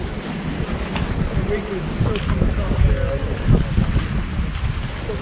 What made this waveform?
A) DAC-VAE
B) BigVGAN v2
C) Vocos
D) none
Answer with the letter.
D